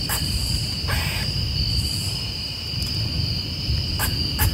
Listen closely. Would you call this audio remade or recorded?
recorded